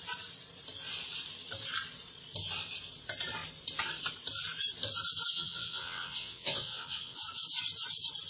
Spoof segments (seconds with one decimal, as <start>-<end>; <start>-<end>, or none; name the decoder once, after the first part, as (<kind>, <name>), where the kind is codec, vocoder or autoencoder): 5.3-7.2 (vocoder, WaveNeXt)